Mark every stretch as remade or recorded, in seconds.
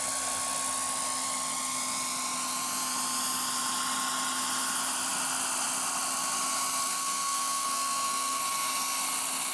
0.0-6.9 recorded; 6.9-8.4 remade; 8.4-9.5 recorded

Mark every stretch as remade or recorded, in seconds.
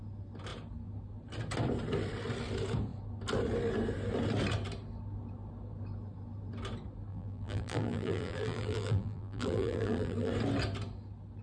0.0-7.1 recorded; 7.1-10.3 remade; 10.3-11.4 recorded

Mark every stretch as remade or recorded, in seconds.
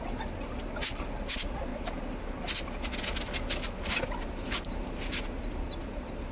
0.0-6.3 recorded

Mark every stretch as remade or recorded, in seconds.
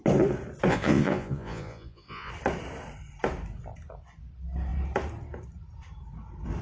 0.0-0.7 recorded; 0.7-2.3 remade; 2.3-6.6 recorded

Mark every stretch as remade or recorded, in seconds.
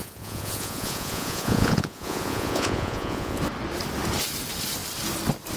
0.0-3.4 remade; 3.4-5.6 recorded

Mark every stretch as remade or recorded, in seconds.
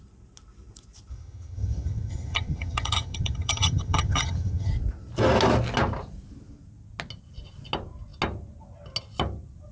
0.0-1.1 recorded; 1.1-4.7 remade; 4.7-9.7 recorded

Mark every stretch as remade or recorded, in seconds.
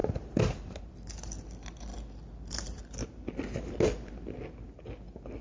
0.0-5.4 recorded